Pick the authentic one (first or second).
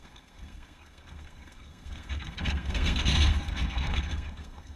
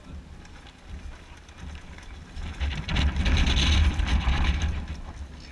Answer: second